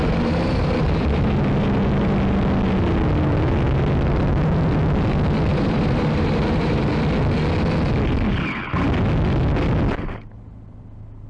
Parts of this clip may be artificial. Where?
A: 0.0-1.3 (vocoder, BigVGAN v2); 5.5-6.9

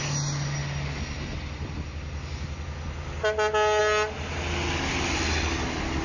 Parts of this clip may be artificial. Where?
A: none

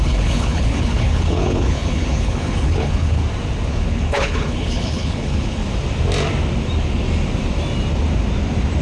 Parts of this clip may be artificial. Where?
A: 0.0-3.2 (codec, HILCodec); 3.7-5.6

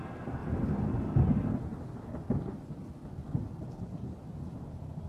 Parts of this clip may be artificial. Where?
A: none

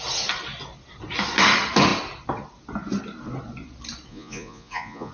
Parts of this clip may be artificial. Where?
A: 4.1-5.1 (vocoder, Vocos)

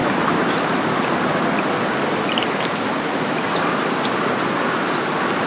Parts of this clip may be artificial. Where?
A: none

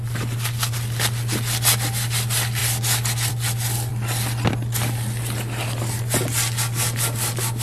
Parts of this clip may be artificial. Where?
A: none